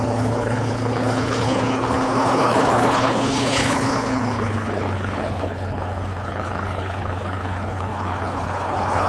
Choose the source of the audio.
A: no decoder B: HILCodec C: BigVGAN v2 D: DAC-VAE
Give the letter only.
B